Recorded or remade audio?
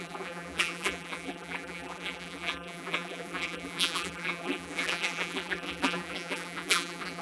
remade